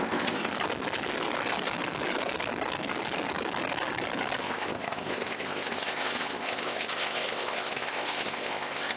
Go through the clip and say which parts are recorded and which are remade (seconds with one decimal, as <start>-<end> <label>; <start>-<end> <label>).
0.0-0.5 remade; 0.5-4.4 recorded; 4.4-9.0 remade